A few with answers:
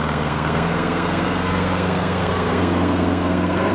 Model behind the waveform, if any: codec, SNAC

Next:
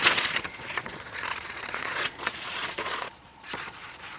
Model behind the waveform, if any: vocoder, Vocos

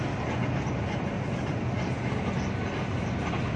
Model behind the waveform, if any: none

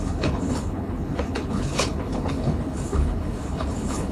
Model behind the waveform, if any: codec, HILCodec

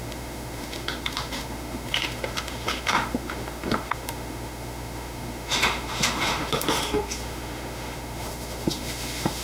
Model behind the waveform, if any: autoencoder, DAC-VAE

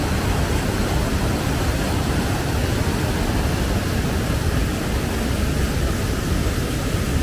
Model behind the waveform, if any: none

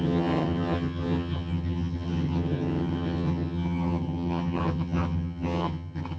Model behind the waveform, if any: vocoder, HiFi-GAN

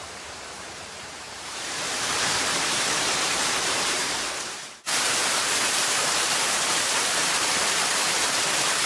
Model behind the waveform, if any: vocoder, BigVGAN v2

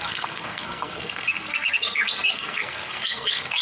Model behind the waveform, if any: codec, SNAC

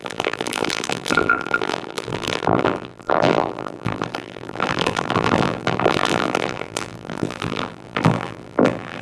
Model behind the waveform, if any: vocoder, BigVGAN v2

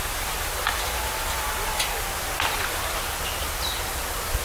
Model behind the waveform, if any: none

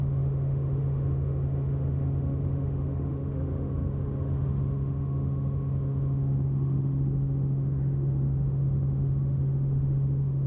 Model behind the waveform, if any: autoencoder, DAC-VAE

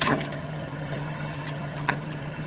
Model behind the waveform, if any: vocoder, HiFi-GAN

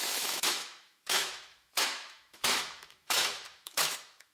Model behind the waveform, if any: autoencoder, DAC-VAE